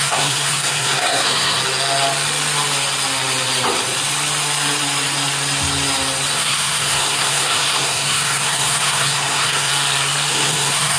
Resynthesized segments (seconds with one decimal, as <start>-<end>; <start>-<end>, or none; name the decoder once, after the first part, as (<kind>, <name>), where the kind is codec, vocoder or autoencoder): 0.0-1.6 (codec, SNAC); 6.3-9.7; 10.3-11.0